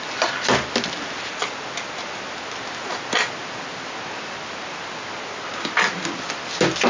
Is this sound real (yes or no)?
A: yes